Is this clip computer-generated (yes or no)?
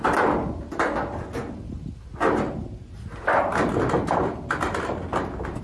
no